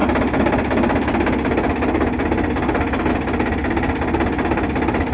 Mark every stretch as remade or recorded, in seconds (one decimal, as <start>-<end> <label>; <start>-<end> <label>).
0.0-5.1 recorded